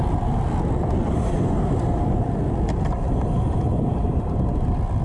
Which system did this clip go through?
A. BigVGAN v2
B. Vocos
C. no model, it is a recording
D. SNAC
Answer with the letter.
C